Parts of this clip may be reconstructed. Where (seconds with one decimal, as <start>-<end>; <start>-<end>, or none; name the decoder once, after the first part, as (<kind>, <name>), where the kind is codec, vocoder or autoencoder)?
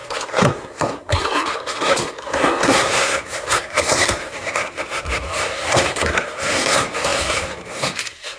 0.0-8.4 (codec, SNAC)